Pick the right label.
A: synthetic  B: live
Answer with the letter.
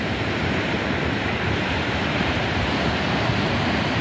A